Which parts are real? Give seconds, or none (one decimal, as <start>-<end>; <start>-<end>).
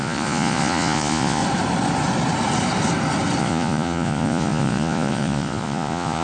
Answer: 1.4-3.4